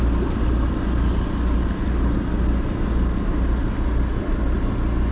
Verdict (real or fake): real